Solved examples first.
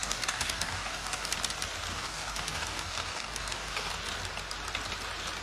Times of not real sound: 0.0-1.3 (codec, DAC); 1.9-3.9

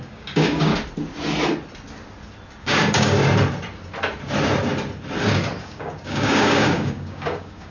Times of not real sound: 0.0-0.7 (codec, DAC); 2.6-3.2; 5.6-7.7

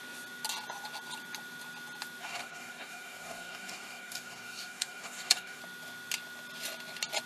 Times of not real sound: 2.2-5.6 (codec, DAC)

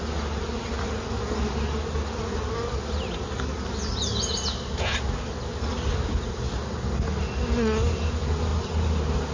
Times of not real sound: none

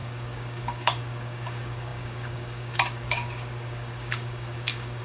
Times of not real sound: 0.0-5.0 (codec, DAC)

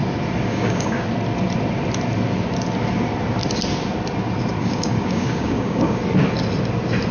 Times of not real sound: 0.5-1.0 (codec, DAC); 4.6-6.0

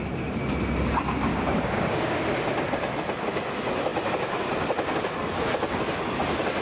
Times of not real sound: 1.3-2.2 (codec, DAC)